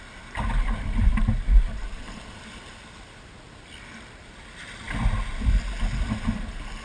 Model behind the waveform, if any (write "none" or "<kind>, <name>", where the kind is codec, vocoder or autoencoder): none